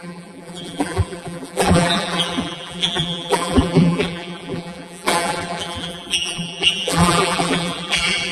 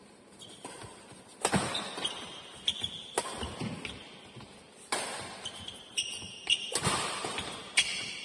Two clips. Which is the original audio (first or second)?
second